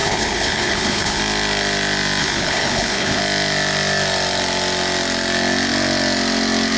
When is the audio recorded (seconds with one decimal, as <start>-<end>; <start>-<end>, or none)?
1.2-2.2; 3.2-6.8